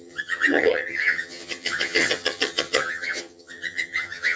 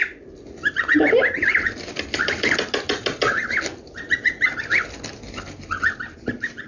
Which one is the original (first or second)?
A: second